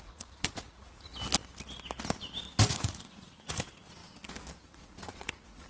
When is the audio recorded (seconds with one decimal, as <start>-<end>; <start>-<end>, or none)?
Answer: 1.1-2.7; 4.0-4.7

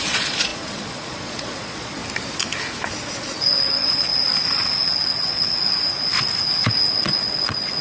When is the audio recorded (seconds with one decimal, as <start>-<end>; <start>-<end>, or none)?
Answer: 2.0-3.2; 4.1-4.8; 6.1-6.9

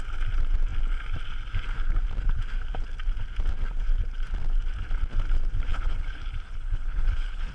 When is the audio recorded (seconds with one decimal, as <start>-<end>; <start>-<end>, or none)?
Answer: 0.0-5.7

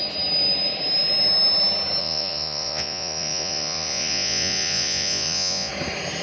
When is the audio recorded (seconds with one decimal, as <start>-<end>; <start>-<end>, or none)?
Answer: 0.0-2.0; 5.7-6.2